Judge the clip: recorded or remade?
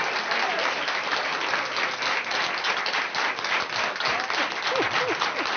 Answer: recorded